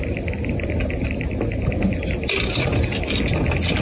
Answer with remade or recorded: recorded